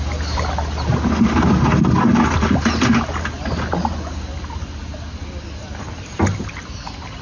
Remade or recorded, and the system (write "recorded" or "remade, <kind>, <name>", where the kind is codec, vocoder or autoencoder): recorded